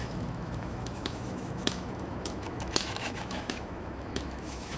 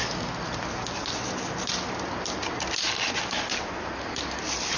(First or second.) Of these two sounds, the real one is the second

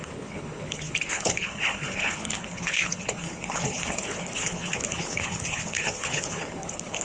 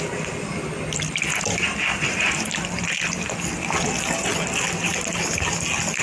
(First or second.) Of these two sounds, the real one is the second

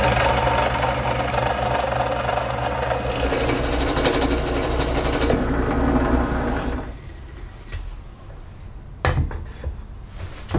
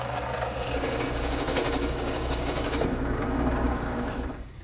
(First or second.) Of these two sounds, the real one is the first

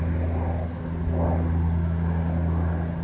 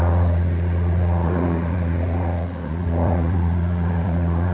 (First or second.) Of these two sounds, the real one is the first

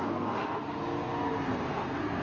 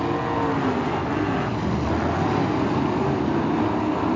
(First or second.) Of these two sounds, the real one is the second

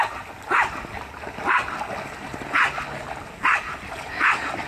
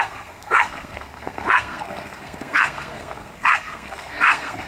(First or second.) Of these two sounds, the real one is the first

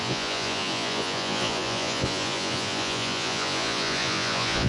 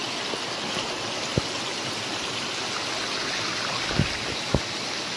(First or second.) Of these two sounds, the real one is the second